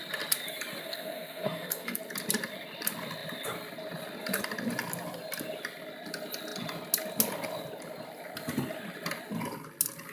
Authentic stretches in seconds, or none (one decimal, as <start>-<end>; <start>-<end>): 0.0-0.8; 2.0-10.1